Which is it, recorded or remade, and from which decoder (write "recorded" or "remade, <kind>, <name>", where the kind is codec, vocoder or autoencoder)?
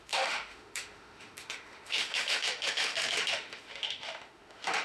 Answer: remade, autoencoder, DAC-VAE